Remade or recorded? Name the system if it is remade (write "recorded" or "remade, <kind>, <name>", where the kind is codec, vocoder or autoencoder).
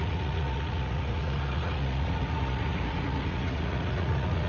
remade, vocoder, Vocos